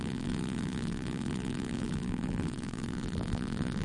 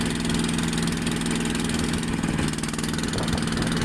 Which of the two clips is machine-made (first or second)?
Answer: first